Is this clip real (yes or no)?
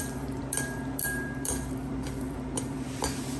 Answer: no